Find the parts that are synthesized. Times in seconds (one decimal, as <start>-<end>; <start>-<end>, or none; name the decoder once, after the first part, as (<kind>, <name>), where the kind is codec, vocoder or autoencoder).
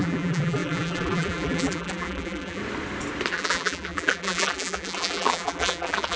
0.0-2.6 (vocoder, BigVGAN v2); 3.3-6.2